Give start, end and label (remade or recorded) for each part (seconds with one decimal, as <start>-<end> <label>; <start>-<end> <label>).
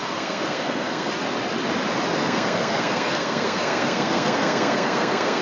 0.0-1.1 remade; 1.1-2.2 recorded; 2.2-5.4 remade